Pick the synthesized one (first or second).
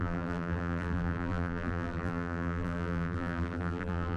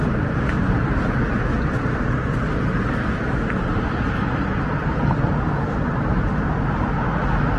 first